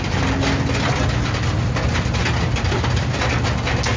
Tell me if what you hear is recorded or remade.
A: recorded